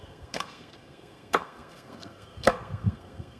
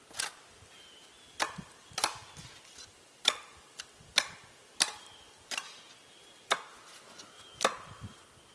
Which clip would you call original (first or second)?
second